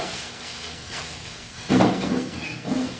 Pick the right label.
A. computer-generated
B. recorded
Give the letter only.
A